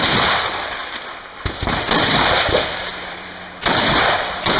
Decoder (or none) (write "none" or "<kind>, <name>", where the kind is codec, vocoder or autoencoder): vocoder, BigVGAN v2